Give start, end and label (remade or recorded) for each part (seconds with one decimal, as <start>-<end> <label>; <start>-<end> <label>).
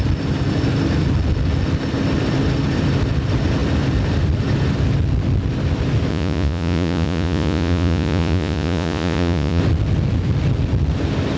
0.0-6.1 recorded; 6.1-9.6 remade; 9.6-11.4 recorded